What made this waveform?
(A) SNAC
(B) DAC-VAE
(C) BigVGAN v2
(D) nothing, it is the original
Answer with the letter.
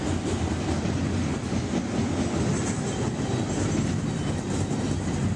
D